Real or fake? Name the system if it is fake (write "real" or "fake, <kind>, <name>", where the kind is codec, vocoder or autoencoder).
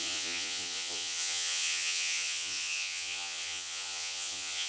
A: fake, vocoder, Vocos